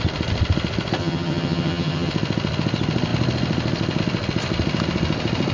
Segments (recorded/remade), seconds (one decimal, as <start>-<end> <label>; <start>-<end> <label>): 0.0-1.0 recorded; 1.0-2.1 remade; 2.1-5.5 recorded